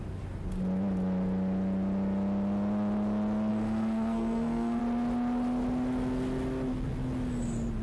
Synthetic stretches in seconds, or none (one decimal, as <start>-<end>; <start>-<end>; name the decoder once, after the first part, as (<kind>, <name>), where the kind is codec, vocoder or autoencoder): 3.5-4.8 (codec, SNAC)

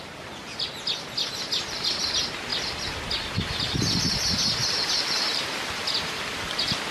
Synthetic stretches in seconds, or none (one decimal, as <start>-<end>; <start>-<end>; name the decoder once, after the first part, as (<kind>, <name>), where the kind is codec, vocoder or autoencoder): 4.6-5.8 (vocoder, BigVGAN v2)

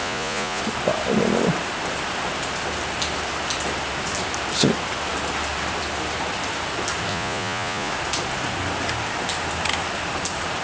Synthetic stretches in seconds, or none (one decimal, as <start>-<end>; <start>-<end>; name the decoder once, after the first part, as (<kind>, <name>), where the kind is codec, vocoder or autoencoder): 0.0-0.6 (vocoder, Vocos); 7.1-7.9

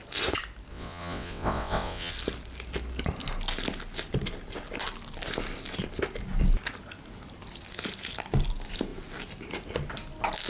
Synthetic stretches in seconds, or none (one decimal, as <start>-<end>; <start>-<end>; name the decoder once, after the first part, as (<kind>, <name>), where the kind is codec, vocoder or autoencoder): 0.7-2.1 (vocoder, WaveNeXt)

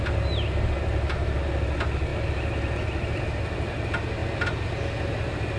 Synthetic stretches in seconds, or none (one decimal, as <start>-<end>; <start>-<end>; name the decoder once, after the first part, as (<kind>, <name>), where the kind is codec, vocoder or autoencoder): none

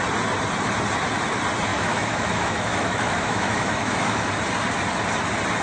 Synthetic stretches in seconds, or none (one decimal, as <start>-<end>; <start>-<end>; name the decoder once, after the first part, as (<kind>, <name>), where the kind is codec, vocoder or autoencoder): 1.7-4.3 (autoencoder, DAC-VAE)